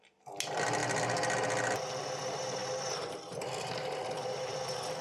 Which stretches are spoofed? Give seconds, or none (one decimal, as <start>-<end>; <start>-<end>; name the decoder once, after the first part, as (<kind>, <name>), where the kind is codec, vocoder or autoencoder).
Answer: 2.6-3.5 (vocoder, BigVGAN v2); 4.0-5.0